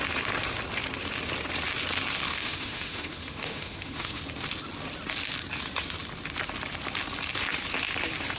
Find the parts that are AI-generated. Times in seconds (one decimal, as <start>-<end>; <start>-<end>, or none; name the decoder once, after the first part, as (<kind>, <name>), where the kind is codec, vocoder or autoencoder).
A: 2.3-4.2 (autoencoder, DAC-VAE)